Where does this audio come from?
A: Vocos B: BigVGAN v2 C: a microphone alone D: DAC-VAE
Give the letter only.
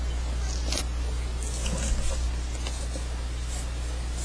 C